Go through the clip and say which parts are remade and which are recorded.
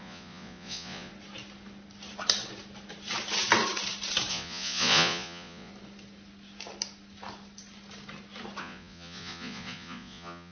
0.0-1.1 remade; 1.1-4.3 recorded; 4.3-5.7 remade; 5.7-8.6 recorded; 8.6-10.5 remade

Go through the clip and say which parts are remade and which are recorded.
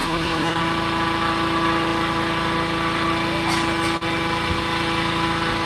0.0-0.6 remade; 0.6-5.7 recorded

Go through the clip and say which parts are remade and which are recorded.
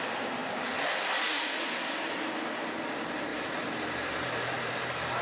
0.0-3.3 recorded; 3.3-4.8 remade; 4.8-5.2 recorded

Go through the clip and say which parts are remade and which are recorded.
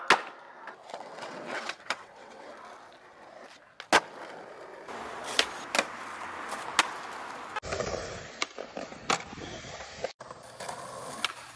0.0-0.8 recorded; 0.8-2.5 remade; 2.5-11.6 recorded